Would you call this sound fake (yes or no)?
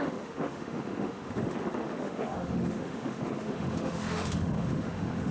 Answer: yes